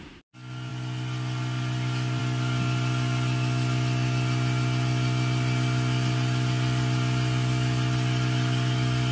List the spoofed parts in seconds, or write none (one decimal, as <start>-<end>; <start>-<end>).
none